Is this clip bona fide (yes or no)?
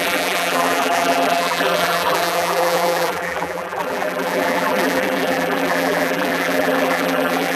no